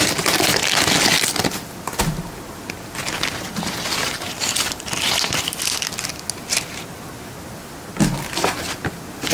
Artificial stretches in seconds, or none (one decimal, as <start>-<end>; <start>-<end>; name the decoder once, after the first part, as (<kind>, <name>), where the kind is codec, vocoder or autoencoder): none